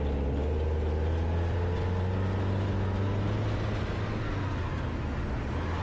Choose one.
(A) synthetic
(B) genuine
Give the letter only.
B